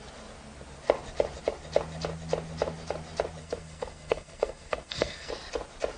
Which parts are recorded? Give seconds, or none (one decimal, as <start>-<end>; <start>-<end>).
0.0-3.4; 5.3-6.0